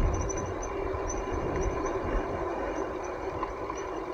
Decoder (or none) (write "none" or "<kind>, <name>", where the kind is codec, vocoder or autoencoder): vocoder, BigVGAN v2